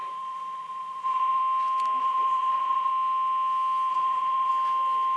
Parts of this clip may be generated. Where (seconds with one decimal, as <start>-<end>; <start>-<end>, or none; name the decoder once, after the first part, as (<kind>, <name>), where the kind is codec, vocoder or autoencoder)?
0.0-1.4 (vocoder, Vocos); 2.0-2.9; 3.9-4.5